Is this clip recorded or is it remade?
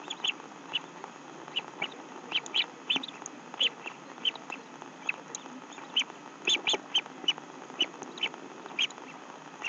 recorded